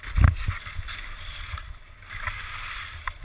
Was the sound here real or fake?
real